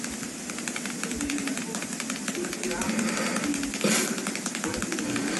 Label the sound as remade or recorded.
recorded